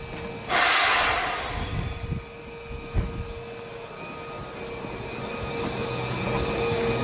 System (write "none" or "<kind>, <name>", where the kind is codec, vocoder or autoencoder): none